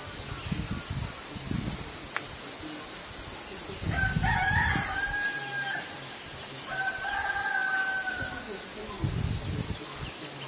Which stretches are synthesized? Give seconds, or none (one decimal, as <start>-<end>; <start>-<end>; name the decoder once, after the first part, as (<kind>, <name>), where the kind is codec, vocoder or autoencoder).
none